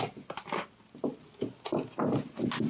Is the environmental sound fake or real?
real